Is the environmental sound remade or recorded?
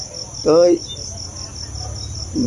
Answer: recorded